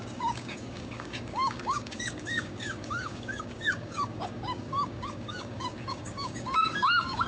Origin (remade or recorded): remade